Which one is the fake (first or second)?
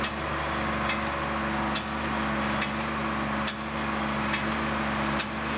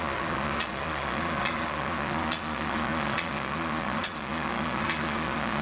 second